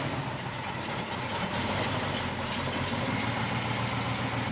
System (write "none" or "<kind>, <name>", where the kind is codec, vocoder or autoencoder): none